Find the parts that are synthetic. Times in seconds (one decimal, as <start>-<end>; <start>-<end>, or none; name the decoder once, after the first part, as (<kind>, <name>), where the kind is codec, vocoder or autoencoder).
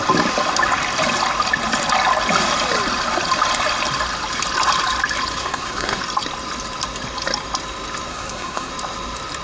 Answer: 5.4-6.0 (codec, SNAC); 8.1-8.7